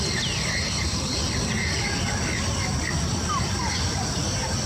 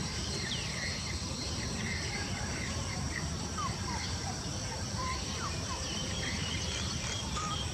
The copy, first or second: second